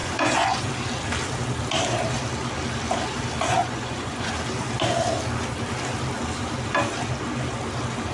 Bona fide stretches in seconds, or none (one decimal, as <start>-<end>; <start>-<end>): 0.7-3.6; 4.3-8.1